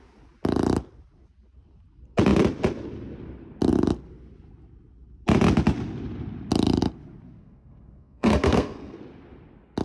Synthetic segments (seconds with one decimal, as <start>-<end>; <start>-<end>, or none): 7.4-9.0